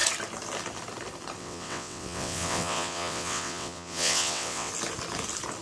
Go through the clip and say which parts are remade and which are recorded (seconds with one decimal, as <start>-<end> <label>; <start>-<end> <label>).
0.0-1.4 recorded; 1.4-4.7 remade; 4.7-5.6 recorded